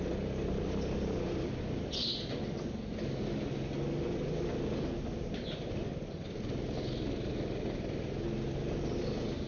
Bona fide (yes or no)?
yes